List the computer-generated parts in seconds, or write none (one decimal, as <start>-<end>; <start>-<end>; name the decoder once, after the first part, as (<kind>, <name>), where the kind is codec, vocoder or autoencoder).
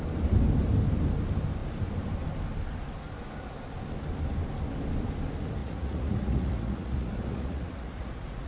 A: 5.6-8.5 (vocoder, Vocos)